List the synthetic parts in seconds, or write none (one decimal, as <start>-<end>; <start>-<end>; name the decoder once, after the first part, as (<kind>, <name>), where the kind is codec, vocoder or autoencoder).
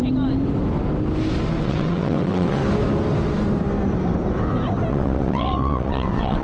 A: 1.6-2.6 (vocoder, WaveNeXt); 4.9-6.4